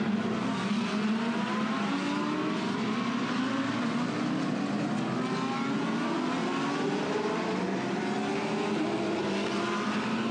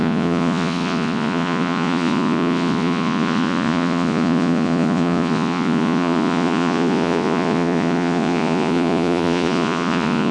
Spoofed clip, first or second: second